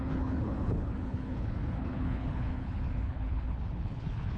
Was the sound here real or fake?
fake